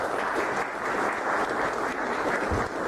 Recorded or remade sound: recorded